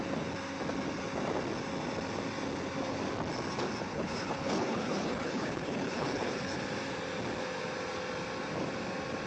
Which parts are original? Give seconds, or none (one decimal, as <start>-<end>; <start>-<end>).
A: 0.0-3.9; 6.6-9.3